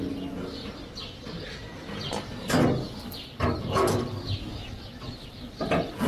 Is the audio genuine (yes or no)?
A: yes